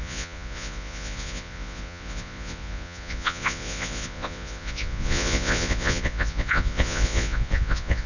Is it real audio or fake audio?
fake